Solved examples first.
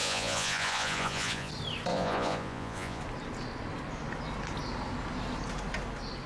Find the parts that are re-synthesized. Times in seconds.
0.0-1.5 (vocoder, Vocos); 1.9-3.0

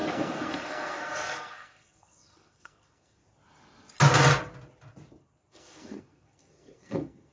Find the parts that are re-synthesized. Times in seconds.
0.0-3.2 (codec, SNAC); 5.5-7.3